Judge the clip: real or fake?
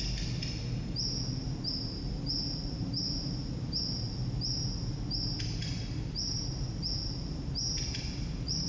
real